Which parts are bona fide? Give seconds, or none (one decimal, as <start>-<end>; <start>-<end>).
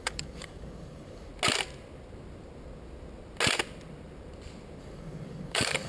1.3-4.8